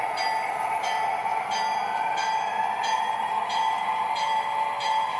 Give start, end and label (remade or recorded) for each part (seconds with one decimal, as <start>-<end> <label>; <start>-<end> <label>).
0.0-5.2 remade